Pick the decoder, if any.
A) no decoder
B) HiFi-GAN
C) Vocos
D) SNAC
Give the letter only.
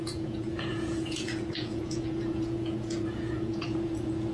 C